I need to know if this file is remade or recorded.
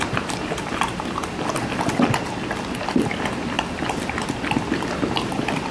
recorded